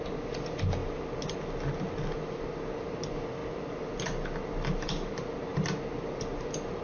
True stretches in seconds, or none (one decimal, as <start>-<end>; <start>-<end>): 0.0-6.8

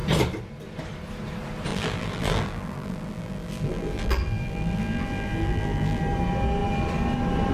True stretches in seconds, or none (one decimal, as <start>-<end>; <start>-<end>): 0.0-1.7; 6.0-7.5

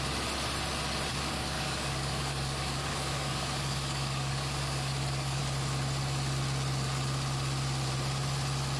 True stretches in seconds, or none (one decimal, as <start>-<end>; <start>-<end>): 0.0-1.1; 5.4-8.8

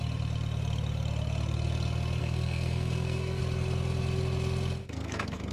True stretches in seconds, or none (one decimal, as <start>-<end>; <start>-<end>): 0.0-2.2; 3.4-4.8

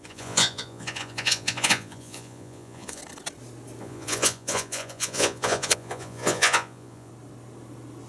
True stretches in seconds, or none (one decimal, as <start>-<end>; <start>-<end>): 3.0-3.8; 7.1-8.1

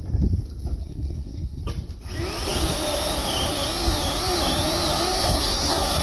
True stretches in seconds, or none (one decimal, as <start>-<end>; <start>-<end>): 0.0-0.8; 1.6-5.2

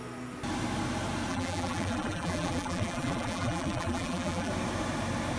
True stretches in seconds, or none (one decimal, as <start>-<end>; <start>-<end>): 0.0-1.3; 4.5-5.4